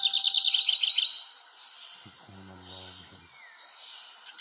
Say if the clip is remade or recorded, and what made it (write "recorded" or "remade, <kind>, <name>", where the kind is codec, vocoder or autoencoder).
recorded